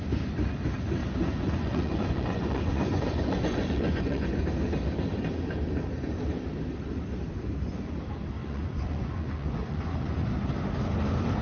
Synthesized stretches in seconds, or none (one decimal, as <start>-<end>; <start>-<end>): 1.0-4.4; 8.4-10.3

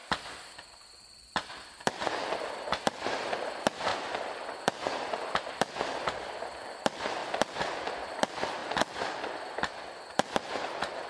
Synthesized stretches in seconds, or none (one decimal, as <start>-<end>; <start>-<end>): 0.0-1.8

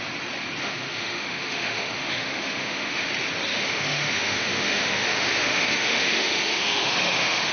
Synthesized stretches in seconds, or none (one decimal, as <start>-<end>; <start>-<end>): 0.6-3.1; 3.5-7.5